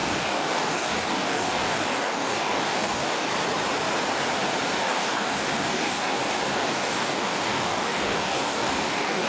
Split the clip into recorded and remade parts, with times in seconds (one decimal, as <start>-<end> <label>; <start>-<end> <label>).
0.0-3.3 remade; 3.3-4.8 recorded; 4.8-9.3 remade